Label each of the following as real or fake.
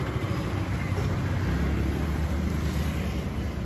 real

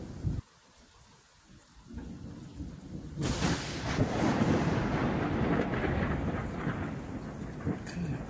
real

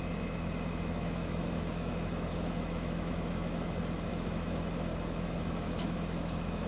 fake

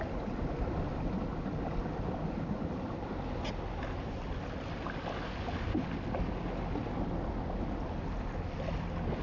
real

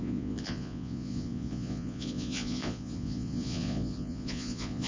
fake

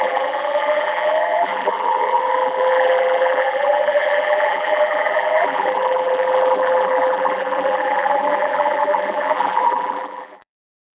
fake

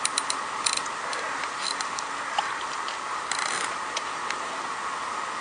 real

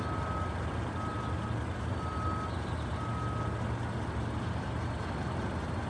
real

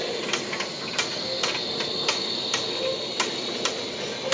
real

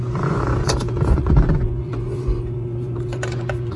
fake